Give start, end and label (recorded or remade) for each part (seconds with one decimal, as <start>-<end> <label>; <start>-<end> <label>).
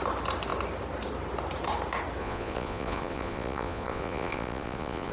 0.0-2.2 recorded; 2.2-5.1 remade